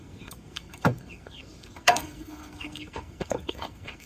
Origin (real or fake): fake